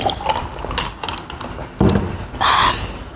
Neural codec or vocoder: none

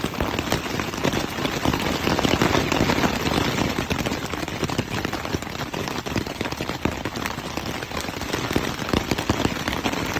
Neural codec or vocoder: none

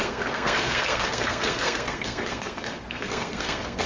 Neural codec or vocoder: codec, SNAC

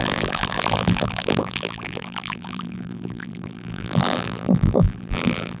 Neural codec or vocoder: vocoder, BigVGAN v2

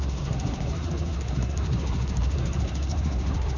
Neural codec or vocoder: codec, SNAC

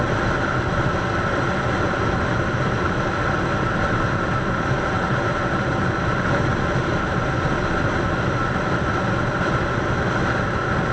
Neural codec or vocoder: none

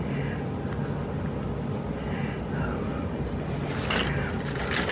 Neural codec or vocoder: none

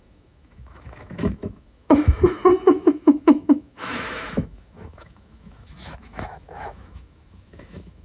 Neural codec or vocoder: autoencoder, DAC-VAE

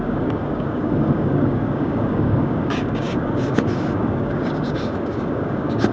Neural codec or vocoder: codec, DAC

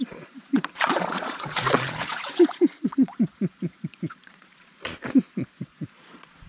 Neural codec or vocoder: vocoder, Vocos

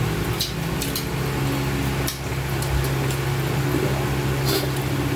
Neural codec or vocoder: none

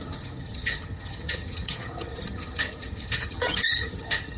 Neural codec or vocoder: vocoder, HiFi-GAN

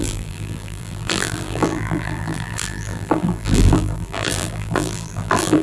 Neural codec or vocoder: vocoder, BigVGAN v2